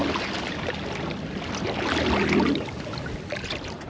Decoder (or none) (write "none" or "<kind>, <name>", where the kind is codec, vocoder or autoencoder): none